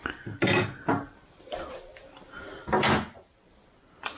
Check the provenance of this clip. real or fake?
real